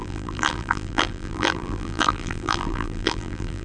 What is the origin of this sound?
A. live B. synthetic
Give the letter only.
B